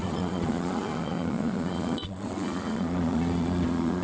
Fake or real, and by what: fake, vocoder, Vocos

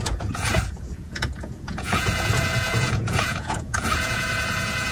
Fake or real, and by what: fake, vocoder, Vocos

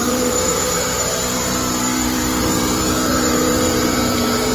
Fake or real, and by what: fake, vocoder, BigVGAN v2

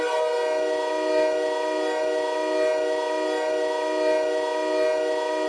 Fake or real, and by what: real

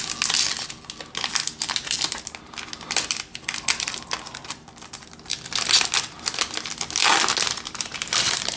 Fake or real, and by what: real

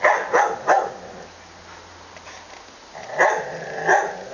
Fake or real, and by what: real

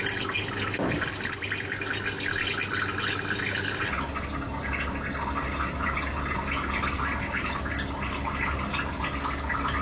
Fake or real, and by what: real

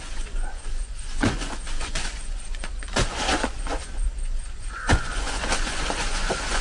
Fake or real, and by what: fake, vocoder, Vocos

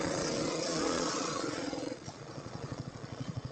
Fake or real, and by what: fake, vocoder, Vocos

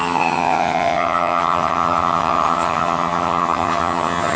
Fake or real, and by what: fake, vocoder, HiFi-GAN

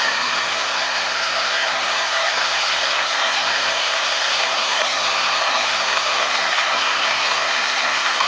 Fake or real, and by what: fake, codec, SNAC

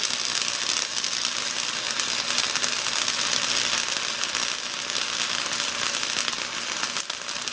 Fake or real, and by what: real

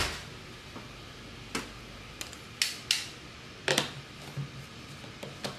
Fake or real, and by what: real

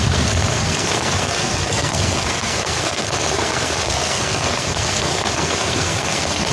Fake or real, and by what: fake, codec, SNAC